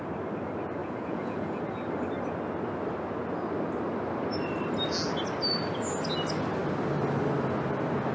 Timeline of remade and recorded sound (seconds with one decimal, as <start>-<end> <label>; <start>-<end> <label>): 0.0-0.8 recorded; 0.8-1.6 remade; 1.6-8.1 recorded